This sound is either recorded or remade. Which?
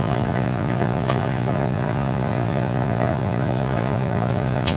remade